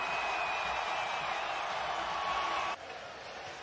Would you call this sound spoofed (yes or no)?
no